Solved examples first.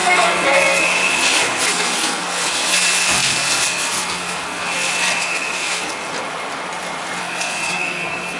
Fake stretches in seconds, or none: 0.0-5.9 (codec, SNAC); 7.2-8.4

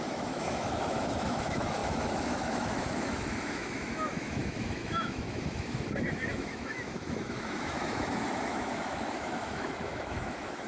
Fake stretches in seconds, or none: 0.0-10.7 (autoencoder, DAC-VAE)

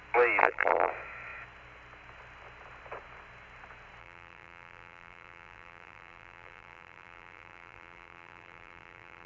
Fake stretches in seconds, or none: 0.4-0.9 (vocoder, BigVGAN v2); 4.0-9.3

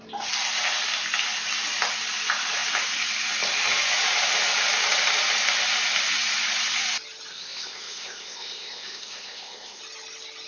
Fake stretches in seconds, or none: 7.3-9.8 (codec, ZipCodec)